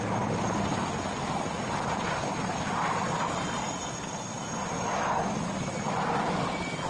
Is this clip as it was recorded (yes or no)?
yes